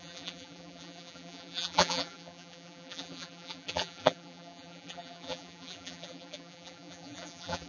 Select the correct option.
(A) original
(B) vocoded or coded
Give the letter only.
B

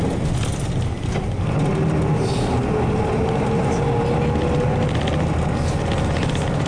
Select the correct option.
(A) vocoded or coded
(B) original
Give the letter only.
B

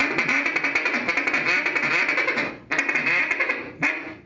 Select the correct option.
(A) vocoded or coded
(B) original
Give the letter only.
B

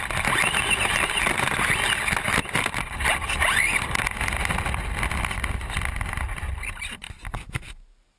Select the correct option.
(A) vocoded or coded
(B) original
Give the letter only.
B